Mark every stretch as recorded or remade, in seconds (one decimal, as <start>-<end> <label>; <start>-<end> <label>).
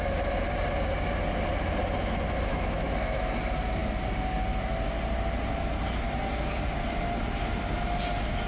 0.0-2.5 recorded; 2.5-3.2 remade; 3.2-8.5 recorded